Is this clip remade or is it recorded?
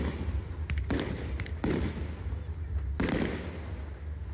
recorded